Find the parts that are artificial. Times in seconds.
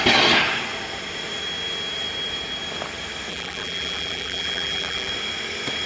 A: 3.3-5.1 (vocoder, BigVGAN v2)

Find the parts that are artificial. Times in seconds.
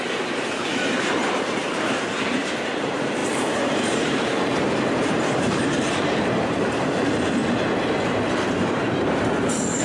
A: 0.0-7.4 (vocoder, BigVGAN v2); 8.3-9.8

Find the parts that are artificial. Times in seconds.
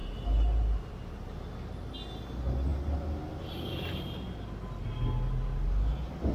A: none